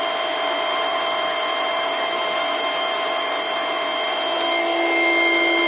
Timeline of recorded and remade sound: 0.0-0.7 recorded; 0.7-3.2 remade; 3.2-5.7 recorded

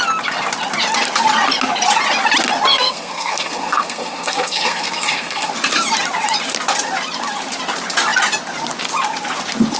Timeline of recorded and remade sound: 0.0-2.7 recorded; 2.7-5.5 remade; 5.5-9.8 recorded

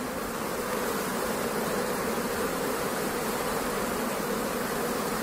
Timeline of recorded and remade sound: 0.0-5.2 recorded